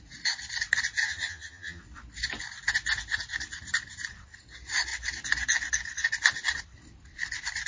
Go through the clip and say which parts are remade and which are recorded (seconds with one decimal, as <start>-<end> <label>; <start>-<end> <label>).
0.0-1.0 recorded; 1.0-1.8 remade; 1.8-7.7 recorded